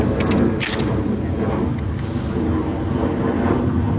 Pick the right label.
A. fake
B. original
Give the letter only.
B